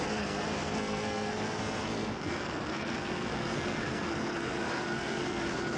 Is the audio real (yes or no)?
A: no